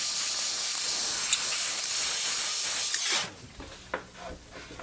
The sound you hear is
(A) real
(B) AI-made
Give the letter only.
A